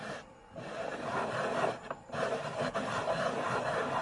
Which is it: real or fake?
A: fake